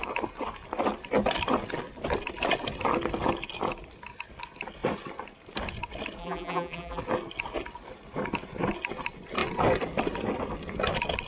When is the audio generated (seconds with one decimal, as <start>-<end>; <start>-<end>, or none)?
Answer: 6.2-7.0